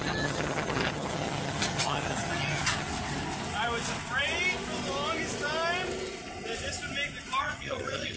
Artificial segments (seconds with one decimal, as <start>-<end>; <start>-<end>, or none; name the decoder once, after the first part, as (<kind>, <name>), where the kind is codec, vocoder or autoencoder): 0.0-2.9 (vocoder, HiFi-GAN); 7.4-8.2